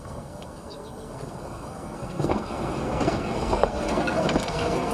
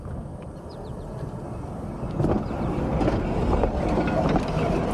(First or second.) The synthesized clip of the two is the first